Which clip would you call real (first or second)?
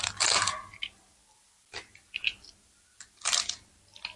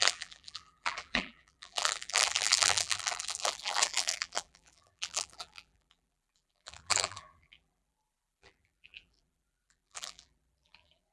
first